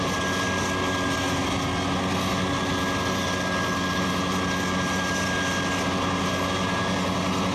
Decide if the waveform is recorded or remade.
recorded